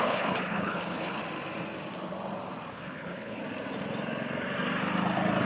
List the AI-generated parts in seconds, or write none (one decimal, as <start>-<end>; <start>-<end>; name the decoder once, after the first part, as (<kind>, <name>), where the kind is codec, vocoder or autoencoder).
0.0-1.2 (codec, HILCodec); 2.7-3.4